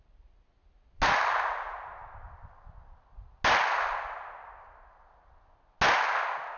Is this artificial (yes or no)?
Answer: no